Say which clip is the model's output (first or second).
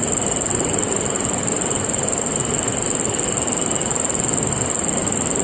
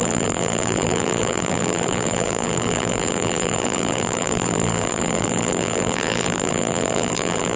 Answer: second